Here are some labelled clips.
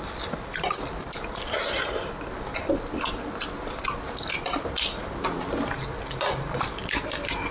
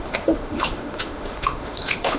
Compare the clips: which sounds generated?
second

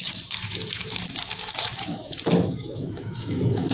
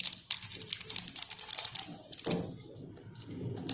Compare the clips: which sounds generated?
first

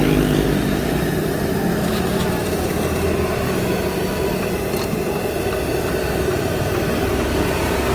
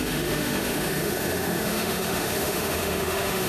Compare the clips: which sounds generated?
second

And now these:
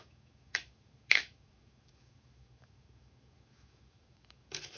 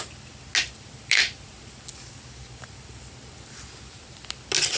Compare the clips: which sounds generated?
first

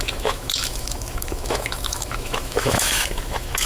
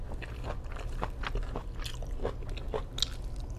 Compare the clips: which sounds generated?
first